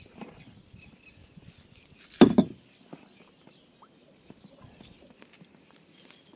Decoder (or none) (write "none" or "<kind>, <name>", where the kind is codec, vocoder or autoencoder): none